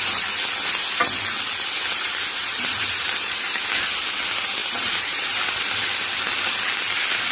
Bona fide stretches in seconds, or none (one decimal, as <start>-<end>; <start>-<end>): 0.0-2.4; 4.0-4.6; 5.7-7.3